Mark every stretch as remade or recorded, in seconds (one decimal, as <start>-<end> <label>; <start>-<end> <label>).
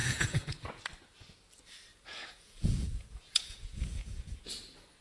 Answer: 0.0-0.8 remade; 0.8-1.9 recorded; 1.9-4.5 remade; 4.5-5.0 recorded